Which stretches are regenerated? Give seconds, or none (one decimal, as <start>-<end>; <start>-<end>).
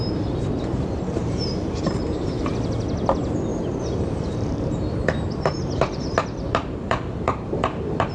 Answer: 1.2-2.5; 3.5-8.1